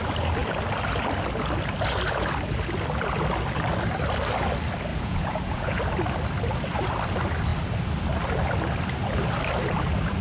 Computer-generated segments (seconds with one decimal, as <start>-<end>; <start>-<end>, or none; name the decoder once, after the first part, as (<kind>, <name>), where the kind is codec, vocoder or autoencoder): 4.9-5.8 (vocoder, Vocos)